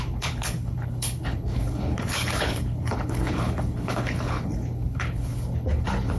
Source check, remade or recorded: remade